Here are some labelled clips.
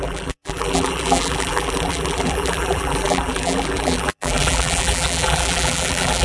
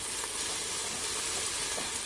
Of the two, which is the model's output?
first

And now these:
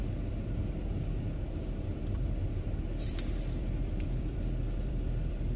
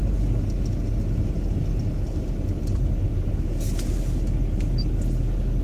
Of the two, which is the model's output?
first